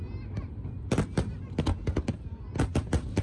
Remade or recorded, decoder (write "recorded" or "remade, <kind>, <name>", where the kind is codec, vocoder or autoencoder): recorded